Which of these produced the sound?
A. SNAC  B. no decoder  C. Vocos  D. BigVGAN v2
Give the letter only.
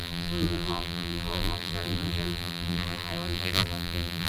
D